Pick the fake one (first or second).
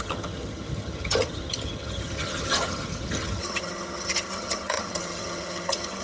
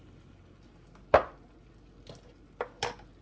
first